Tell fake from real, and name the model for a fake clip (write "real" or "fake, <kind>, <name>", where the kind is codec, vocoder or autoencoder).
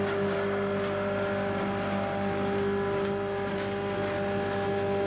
real